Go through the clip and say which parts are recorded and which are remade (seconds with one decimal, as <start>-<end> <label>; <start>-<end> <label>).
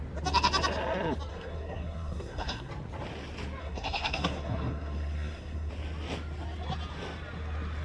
0.0-1.3 recorded; 1.3-2.7 remade; 2.7-3.6 recorded; 3.6-5.7 remade; 5.7-7.8 recorded